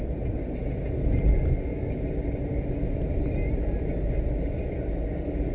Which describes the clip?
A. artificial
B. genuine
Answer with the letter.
B